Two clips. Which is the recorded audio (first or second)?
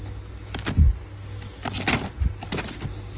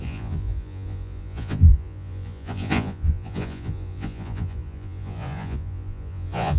first